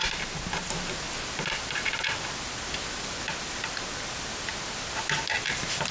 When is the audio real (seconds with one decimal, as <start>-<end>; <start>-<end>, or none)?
0.0-5.9